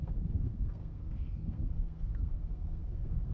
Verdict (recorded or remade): remade